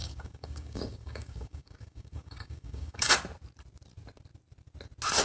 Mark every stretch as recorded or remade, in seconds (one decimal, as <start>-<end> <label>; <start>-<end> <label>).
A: 0.0-3.1 remade; 3.1-5.2 recorded